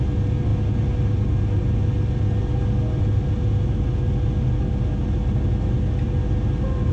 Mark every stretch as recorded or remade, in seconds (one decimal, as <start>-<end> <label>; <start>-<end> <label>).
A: 0.0-6.9 recorded